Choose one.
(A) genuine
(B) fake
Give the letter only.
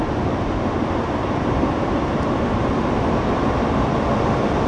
B